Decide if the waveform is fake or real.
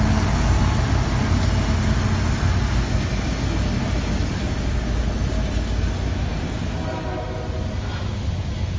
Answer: real